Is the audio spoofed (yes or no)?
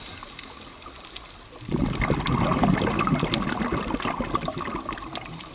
no